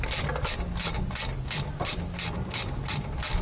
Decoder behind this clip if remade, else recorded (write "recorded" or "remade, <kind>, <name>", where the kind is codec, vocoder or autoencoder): recorded